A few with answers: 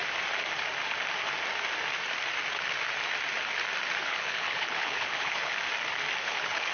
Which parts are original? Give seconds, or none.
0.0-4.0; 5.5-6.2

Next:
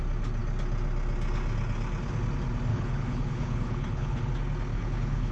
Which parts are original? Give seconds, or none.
0.0-2.7; 4.3-4.7

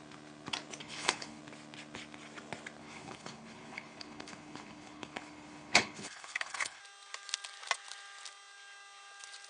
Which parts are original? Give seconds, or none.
0.0-0.8; 1.4-2.8; 6.8-9.5

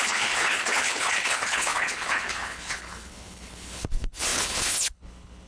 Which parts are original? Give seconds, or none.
none

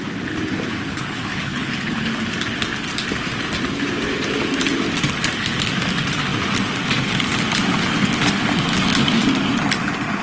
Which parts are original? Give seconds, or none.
0.0-0.9; 2.1-10.2

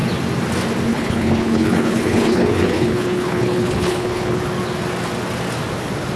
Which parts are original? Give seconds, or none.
0.0-0.9; 4.4-6.2